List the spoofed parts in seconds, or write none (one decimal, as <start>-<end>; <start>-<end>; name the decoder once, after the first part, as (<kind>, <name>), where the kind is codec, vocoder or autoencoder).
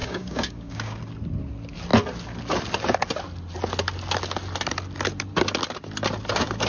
0.0-1.0 (codec, DAC)